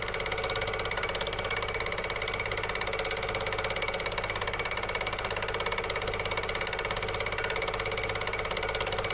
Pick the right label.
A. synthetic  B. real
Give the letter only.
B